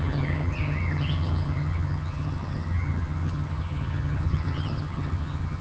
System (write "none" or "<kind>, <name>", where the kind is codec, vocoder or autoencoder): vocoder, HiFi-GAN